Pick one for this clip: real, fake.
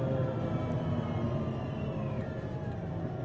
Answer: real